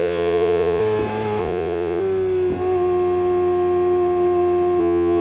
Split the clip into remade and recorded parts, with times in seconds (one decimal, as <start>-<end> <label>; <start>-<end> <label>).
0.0-0.8 remade; 0.8-1.4 recorded; 1.4-2.0 remade; 2.0-4.8 recorded; 4.8-5.2 remade